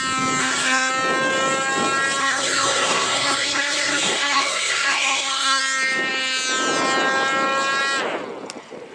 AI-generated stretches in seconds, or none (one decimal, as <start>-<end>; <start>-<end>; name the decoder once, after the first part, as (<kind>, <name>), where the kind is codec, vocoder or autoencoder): 0.4-0.9 (codec, SNAC); 2.2-5.6